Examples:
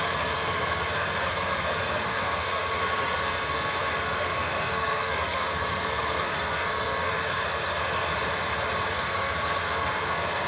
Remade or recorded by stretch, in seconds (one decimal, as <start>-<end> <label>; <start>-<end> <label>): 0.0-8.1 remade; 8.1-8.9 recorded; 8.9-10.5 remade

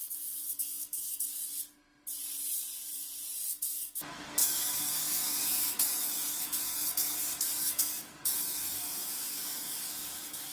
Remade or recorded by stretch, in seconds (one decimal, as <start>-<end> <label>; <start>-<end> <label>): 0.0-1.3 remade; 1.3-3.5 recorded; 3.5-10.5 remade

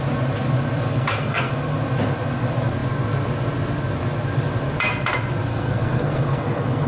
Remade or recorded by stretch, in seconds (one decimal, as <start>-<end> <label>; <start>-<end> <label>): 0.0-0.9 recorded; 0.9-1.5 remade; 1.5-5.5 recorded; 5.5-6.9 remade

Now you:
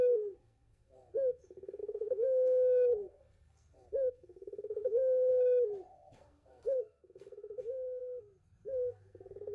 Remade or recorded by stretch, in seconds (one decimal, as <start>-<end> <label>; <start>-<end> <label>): 0.0-5.3 remade; 5.3-5.9 recorded; 5.9-9.5 remade